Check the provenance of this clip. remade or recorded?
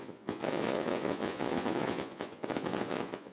remade